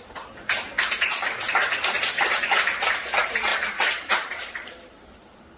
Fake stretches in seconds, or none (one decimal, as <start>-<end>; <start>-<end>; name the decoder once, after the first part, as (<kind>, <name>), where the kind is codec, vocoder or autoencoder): 0.0-3.5 (vocoder, BigVGAN v2); 4.1-5.6